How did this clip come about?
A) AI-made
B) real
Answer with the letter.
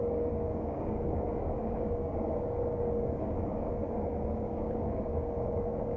A